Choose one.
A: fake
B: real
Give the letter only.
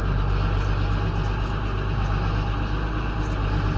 B